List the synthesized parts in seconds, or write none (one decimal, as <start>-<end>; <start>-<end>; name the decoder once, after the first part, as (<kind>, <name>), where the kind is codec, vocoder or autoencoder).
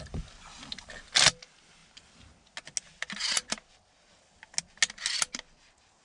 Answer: none